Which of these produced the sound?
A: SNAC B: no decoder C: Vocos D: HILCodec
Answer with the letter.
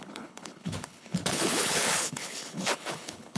D